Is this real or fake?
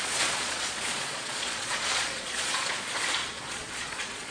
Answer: fake